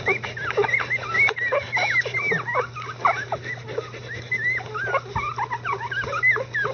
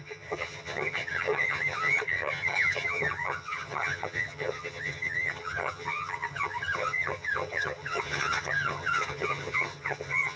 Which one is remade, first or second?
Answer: second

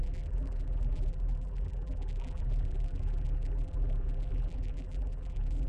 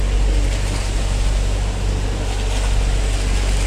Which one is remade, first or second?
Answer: first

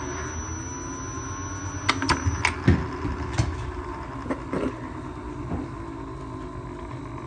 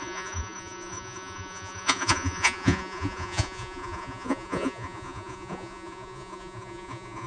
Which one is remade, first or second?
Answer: second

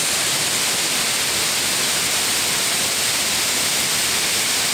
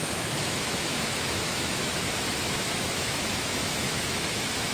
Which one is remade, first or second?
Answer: second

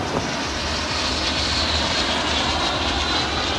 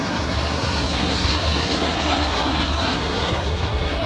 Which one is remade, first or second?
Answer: second